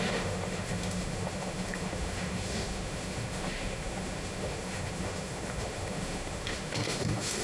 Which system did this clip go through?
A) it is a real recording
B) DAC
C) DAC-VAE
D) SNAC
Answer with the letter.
C